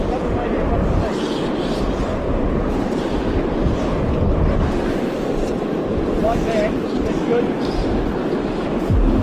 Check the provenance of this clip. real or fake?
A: real